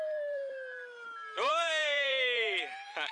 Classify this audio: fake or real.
fake